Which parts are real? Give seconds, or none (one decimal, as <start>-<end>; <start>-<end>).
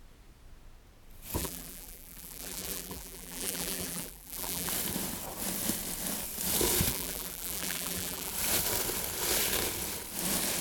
0.0-1.4; 4.7-6.9; 8.3-10.6